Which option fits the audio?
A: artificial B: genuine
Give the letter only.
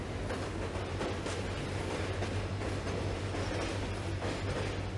B